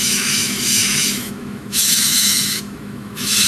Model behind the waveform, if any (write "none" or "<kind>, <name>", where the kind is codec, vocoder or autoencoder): autoencoder, DAC-VAE